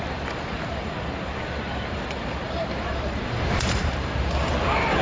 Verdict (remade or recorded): remade